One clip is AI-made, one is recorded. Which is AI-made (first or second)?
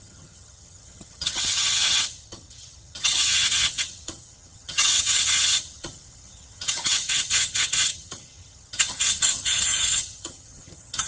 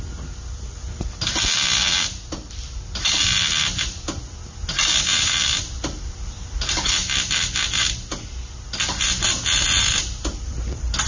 first